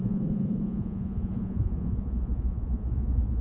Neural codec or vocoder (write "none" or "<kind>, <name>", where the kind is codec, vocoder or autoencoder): vocoder, Vocos